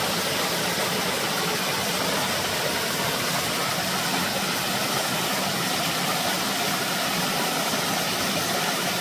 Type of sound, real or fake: fake